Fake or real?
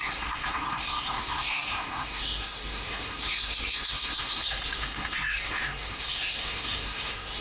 fake